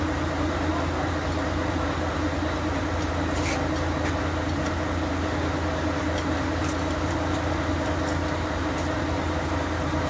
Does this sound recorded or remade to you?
recorded